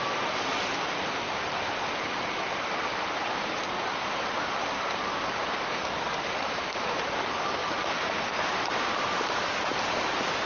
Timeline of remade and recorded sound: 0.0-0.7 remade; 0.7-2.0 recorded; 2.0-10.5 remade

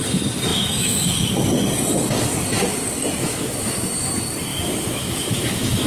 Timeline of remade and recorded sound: 0.0-0.5 recorded; 0.5-1.3 remade; 1.3-3.2 recorded; 3.2-4.1 remade; 4.1-4.5 recorded; 4.5-5.9 remade

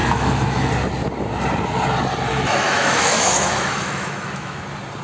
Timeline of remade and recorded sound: 0.0-0.7 remade; 0.7-2.3 recorded; 2.3-4.6 remade; 4.6-5.0 recorded